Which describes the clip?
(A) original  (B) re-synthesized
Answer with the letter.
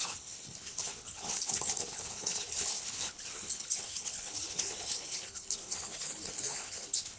B